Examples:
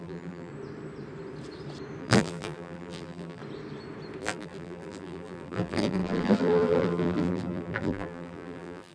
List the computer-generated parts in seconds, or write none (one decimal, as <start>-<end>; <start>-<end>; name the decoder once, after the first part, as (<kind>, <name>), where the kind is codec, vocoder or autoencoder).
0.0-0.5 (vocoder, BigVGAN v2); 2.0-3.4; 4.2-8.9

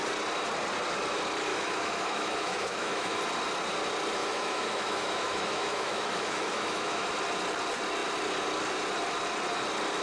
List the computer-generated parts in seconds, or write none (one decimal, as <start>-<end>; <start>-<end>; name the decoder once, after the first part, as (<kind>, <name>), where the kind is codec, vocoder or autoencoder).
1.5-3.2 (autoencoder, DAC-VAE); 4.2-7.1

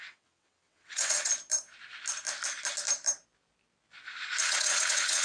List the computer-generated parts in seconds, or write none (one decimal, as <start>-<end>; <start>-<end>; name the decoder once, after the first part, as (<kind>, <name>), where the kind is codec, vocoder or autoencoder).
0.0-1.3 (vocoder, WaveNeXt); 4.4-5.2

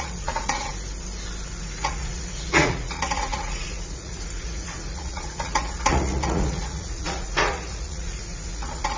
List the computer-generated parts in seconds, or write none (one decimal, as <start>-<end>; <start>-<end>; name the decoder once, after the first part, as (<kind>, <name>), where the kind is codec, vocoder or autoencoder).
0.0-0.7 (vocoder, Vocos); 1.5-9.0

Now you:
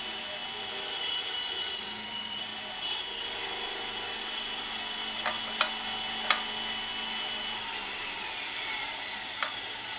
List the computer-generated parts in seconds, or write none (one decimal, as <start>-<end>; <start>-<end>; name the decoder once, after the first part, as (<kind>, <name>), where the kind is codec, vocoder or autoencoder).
none

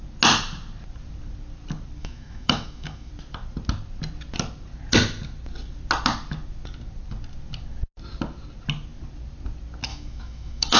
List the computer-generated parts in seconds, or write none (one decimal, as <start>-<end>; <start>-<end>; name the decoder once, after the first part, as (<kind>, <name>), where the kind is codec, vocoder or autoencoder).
2.0-3.1 (autoencoder, DAC-VAE); 9.9-10.8

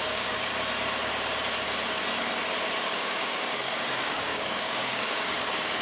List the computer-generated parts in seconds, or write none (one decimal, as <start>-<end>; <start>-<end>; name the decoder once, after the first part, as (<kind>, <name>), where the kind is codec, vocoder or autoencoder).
0.0-0.5 (codec, DAC); 2.8-5.8

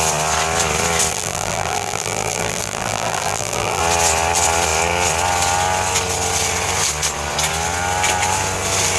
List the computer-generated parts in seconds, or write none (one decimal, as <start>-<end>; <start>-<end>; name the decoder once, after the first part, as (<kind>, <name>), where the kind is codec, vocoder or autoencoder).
1.1-3.8 (vocoder, BigVGAN v2)